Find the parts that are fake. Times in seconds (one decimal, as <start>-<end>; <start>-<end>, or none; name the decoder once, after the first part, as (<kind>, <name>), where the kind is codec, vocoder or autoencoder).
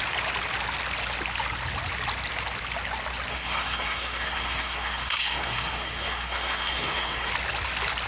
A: 3.3-7.3 (codec, SNAC)